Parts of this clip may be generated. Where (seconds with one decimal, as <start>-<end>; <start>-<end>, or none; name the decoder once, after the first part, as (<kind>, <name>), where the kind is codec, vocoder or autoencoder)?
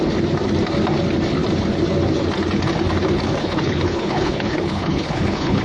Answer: 3.4-5.6 (codec, HILCodec)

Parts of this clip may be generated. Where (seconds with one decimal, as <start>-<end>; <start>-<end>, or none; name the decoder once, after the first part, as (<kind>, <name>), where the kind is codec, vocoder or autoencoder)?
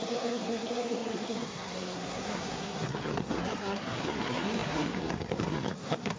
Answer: 0.0-6.2 (codec, SNAC)